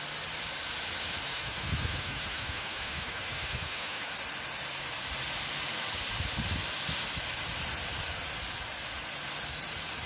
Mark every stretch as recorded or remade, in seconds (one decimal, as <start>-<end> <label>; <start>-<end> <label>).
0.0-1.3 recorded; 1.3-4.1 remade; 4.1-10.1 recorded